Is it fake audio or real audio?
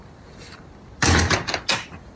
real